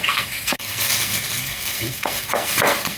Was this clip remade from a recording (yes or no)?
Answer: yes